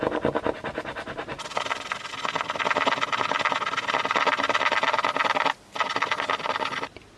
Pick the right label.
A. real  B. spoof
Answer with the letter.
A